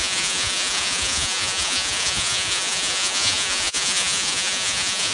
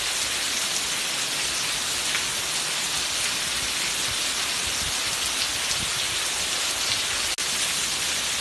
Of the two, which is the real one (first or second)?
second